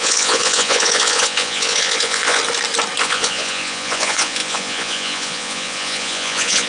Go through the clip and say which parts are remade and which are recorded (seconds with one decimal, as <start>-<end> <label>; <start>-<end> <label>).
0.0-2.4 remade; 2.4-3.0 recorded; 3.0-6.7 remade